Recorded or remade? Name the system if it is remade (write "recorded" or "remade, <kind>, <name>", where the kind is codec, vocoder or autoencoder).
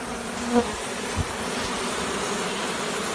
recorded